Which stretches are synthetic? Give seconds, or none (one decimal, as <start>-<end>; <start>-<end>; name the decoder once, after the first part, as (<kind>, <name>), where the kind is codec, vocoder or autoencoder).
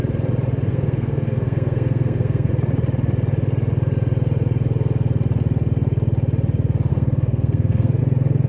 0.7-2.5 (codec, SNAC); 6.9-8.0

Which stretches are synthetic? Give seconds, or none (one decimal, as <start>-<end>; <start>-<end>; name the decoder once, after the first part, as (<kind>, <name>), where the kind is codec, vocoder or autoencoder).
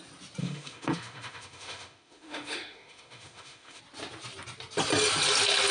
0.4-3.8 (autoencoder, DAC-VAE)